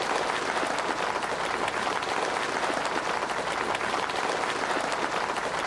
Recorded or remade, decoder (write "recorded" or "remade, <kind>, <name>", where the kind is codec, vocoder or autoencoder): recorded